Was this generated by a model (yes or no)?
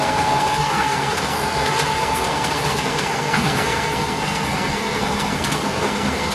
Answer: yes